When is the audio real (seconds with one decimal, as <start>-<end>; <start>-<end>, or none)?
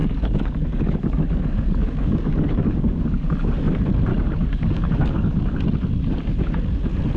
3.6-4.1; 5.6-7.2